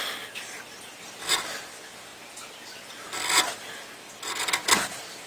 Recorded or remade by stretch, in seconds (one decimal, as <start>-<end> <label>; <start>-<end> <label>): 0.0-5.3 recorded